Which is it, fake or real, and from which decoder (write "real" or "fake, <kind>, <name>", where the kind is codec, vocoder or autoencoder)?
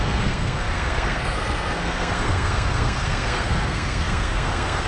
fake, codec, SNAC